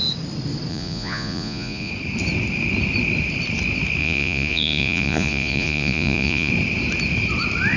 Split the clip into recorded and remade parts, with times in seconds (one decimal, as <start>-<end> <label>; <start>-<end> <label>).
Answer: 0.0-0.7 recorded; 0.7-1.9 remade; 1.9-4.0 recorded; 4.0-6.5 remade; 6.5-7.8 recorded